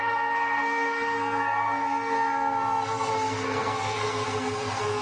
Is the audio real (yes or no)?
no